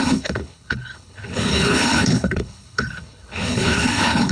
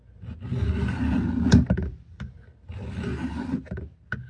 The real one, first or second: second